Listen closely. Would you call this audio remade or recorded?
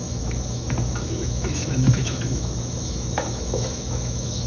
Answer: remade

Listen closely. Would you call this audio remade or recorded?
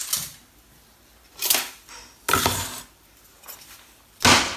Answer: recorded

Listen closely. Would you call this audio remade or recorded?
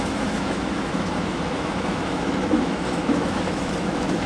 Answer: remade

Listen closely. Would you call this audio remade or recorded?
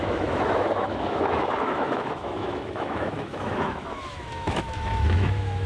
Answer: remade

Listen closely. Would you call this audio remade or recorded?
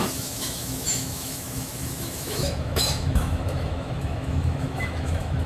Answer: remade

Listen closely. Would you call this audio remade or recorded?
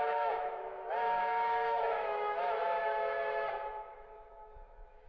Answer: remade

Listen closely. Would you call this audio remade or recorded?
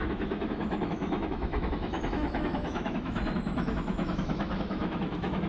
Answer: remade